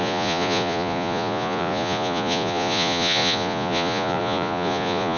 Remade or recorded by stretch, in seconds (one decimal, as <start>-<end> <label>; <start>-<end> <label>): 0.0-5.2 remade